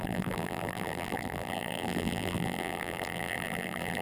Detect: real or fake fake